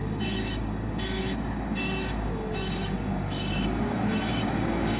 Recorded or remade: remade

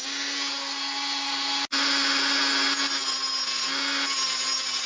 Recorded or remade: recorded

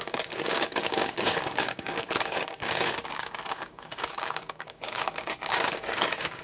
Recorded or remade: remade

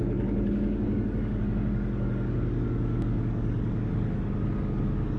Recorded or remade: remade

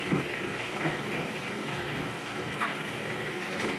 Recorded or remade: remade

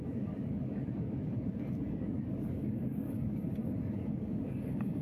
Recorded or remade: remade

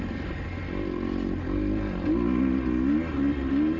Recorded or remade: recorded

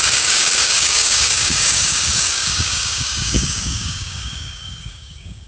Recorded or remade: remade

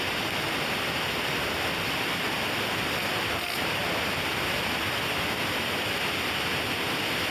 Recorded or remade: recorded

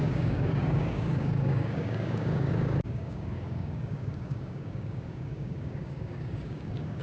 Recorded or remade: remade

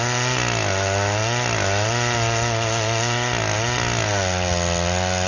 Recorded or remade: recorded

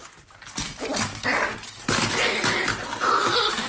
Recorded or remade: recorded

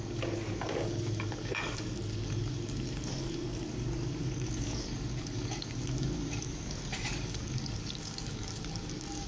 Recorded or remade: remade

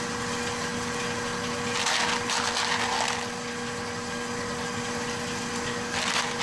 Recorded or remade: recorded